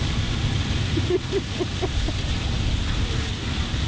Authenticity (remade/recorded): recorded